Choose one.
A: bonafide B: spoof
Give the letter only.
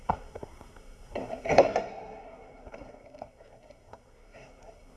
B